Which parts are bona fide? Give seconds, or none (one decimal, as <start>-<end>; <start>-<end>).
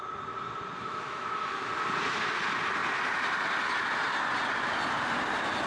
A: 0.0-0.8; 1.7-5.7